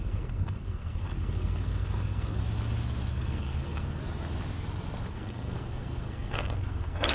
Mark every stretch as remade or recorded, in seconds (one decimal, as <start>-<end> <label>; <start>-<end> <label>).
0.0-2.4 remade; 2.4-3.1 recorded; 3.1-4.0 remade; 4.0-5.1 recorded; 5.1-7.1 remade